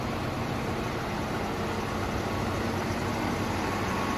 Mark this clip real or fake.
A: real